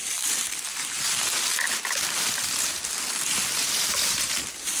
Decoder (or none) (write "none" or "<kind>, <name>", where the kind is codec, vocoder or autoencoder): none